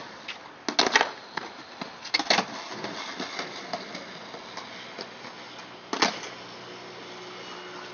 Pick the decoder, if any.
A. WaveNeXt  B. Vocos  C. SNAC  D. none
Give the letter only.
D